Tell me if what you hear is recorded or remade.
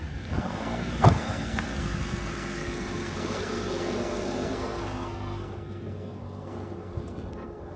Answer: remade